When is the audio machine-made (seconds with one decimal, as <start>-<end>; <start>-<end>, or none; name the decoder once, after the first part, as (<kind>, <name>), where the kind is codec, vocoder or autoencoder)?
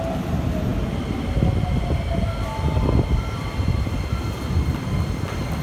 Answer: none